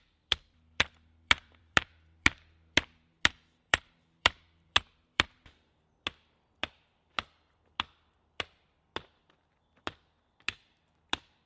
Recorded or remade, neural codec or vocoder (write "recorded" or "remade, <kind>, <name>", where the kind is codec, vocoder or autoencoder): remade, vocoder, BigVGAN v2